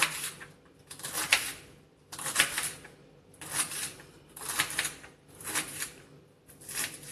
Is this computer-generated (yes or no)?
no